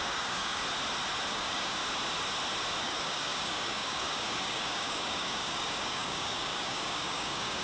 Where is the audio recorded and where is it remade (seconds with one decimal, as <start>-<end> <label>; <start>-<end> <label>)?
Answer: 0.0-0.6 remade; 0.6-1.3 recorded; 1.3-1.8 remade; 1.8-2.8 recorded; 2.8-7.6 remade